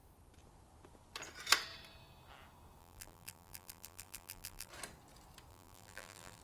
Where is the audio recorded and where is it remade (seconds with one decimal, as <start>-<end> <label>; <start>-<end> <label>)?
0.0-2.8 recorded; 2.8-4.7 remade; 4.7-5.5 recorded; 5.5-6.4 remade